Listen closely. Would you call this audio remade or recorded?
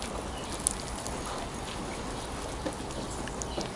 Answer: recorded